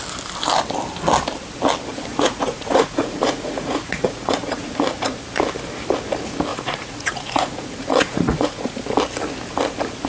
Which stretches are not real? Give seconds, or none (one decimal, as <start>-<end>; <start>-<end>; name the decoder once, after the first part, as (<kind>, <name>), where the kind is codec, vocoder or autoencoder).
2.1-4.7 (vocoder, Vocos); 6.5-8.8